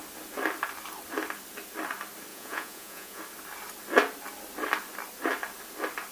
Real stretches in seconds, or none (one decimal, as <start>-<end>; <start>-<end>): 0.0-2.3; 3.2-6.1